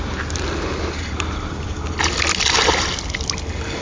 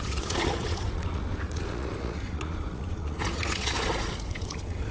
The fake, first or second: second